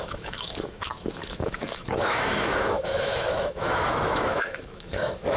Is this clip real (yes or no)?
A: no